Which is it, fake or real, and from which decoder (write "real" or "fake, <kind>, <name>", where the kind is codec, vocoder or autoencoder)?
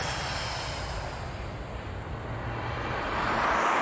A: real